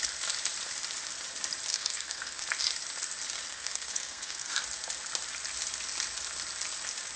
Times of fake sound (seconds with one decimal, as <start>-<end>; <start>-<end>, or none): 1.7-2.4; 3.5-4.6